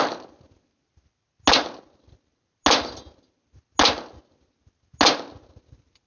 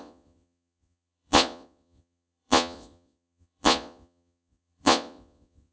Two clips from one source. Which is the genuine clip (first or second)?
first